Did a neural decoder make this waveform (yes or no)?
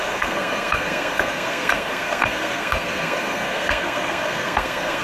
yes